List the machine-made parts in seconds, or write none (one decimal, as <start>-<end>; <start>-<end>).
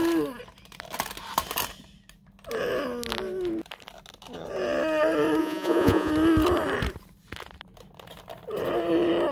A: 5.4-6.1